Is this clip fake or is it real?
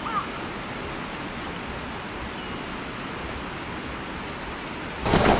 real